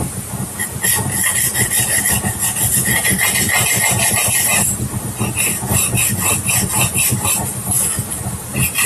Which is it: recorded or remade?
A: recorded